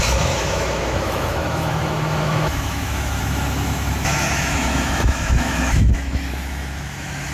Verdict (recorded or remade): remade